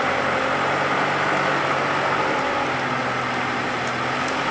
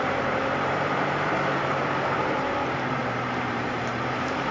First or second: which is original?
first